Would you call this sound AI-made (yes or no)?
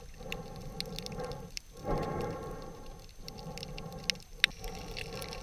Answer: no